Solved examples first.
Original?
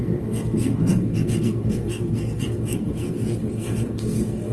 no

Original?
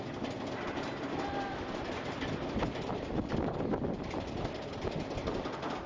yes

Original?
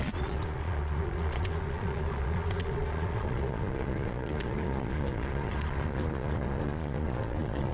no